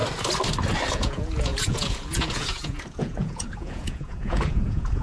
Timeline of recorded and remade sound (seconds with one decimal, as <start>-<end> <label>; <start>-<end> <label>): 0.0-0.9 recorded; 0.9-5.0 remade